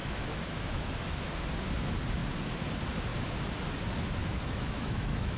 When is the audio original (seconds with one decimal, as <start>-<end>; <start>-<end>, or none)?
1.3-4.2